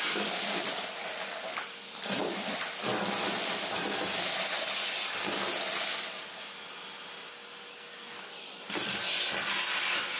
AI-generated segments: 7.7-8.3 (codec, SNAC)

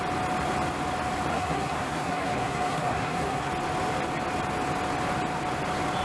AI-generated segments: 1.3-3.5 (codec, SNAC)

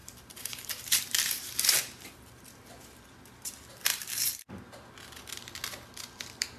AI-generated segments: 0.0-2.3 (vocoder, BigVGAN v2); 3.9-4.5

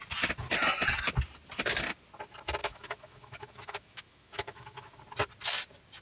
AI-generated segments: 2.6-5.0 (autoencoder, DAC-VAE)

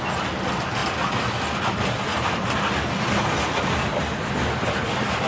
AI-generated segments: none

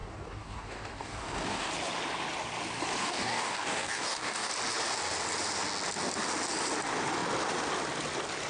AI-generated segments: 0.0-1.7 (codec, DAC); 3.0-4.5